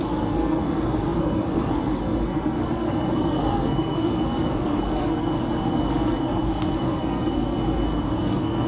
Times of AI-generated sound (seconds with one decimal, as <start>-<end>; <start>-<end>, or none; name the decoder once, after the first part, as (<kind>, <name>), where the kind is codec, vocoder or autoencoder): 0.0-8.7 (codec, SNAC)